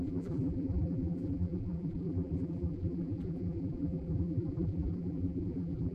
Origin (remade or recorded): remade